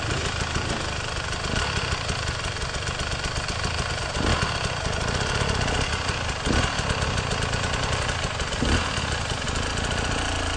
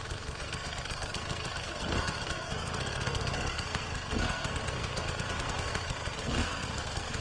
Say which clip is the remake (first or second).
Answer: second